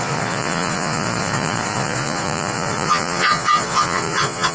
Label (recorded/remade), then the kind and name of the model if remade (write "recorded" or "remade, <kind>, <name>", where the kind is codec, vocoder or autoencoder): remade, vocoder, Vocos